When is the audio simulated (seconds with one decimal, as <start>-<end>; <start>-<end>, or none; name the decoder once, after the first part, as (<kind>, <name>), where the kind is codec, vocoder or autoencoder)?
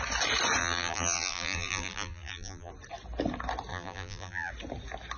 0.6-2.7 (vocoder, BigVGAN v2); 3.7-4.5